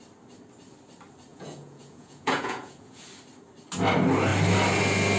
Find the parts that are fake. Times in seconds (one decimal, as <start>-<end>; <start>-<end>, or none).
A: 1.3-3.0